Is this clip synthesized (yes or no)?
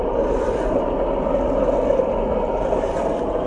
no